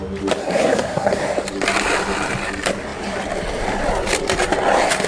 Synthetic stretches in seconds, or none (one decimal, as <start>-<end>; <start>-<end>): 0.4-1.2

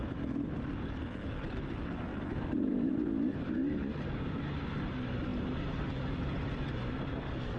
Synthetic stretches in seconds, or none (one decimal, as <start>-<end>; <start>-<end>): 2.1-2.9

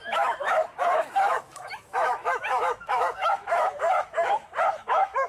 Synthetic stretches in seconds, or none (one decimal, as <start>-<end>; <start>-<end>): 0.0-5.3